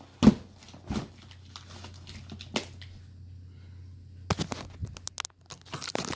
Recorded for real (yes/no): yes